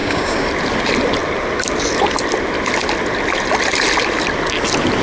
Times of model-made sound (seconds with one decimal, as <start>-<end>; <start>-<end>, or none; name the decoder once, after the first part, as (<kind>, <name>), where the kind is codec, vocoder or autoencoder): 0.0-0.5 (codec, DAC)